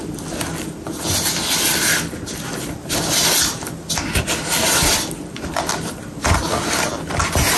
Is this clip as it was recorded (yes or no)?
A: yes